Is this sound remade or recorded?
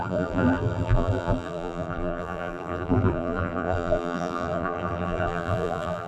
remade